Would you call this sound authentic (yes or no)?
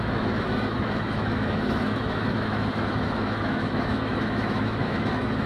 no